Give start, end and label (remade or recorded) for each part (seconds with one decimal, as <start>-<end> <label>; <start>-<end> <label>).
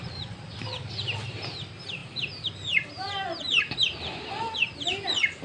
0.0-5.4 recorded